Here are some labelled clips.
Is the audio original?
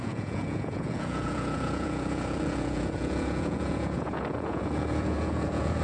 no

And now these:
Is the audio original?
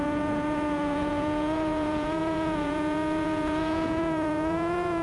no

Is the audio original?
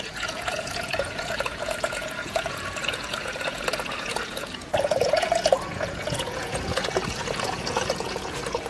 no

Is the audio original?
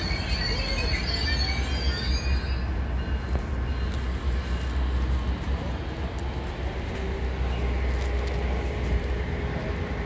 yes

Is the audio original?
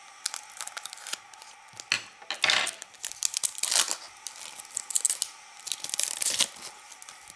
yes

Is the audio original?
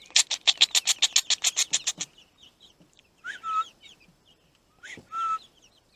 yes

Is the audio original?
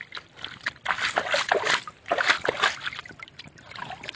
yes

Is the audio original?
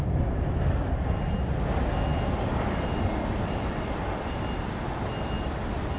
yes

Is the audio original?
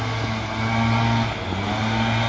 yes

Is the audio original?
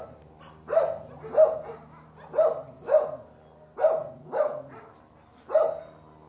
yes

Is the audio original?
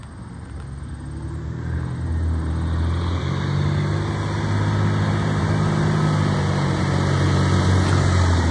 yes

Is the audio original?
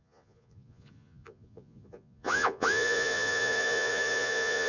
no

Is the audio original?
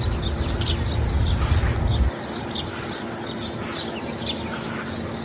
yes